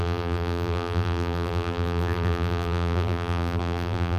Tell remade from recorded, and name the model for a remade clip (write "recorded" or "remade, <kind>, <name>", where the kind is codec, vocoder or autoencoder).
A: remade, vocoder, BigVGAN v2